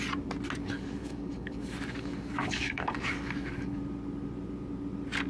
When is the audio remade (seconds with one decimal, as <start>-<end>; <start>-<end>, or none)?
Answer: 0.6-3.8